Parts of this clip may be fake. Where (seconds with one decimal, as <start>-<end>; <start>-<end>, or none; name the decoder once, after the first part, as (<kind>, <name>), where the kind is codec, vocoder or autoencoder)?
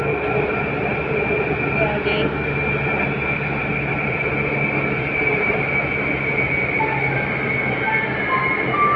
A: 3.6-4.3 (vocoder, BigVGAN v2)